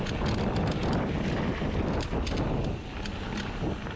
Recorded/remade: recorded